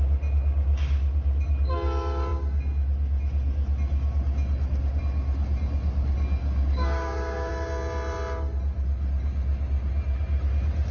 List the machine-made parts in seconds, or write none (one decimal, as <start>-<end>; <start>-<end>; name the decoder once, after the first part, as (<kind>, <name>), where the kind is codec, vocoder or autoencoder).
6.4-7.5 (codec, DAC)